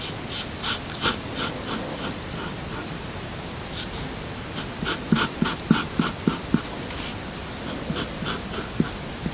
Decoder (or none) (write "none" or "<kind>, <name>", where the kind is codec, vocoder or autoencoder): none